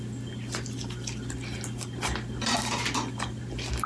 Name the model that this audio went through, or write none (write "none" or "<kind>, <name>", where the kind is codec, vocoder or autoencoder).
none